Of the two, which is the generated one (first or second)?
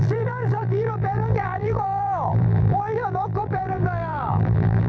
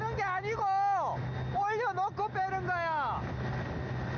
first